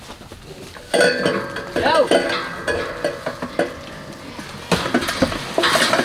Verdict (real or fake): real